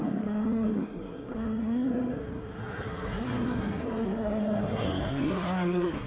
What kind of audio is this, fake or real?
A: fake